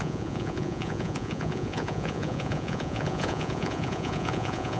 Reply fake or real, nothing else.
fake